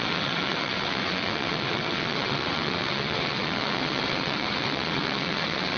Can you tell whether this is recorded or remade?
remade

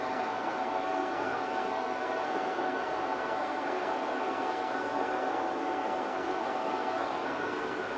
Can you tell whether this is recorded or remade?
remade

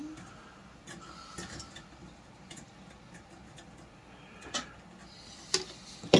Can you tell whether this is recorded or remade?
recorded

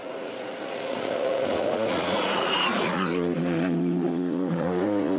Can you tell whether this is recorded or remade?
remade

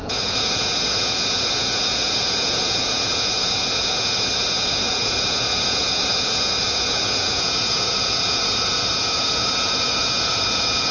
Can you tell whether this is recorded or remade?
remade